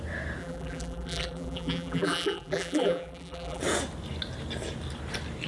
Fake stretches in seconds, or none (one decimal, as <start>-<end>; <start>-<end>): 0.4-3.6